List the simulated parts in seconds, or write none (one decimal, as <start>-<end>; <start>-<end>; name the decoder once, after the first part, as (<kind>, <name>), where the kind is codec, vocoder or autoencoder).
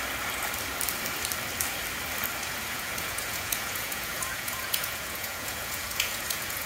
2.4-6.7 (vocoder, Vocos)